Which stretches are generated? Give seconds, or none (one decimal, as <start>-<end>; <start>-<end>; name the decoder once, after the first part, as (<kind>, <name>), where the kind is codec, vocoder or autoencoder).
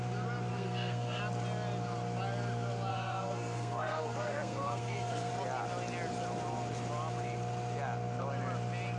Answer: 0.5-1.2 (codec, SNAC); 2.9-5.3